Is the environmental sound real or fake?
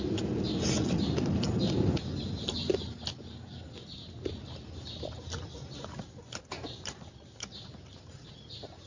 real